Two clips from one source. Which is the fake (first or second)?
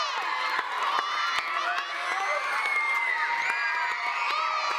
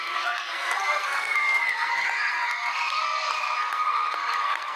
second